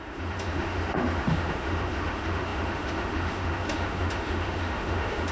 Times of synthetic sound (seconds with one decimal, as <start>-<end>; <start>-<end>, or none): 0.0-5.3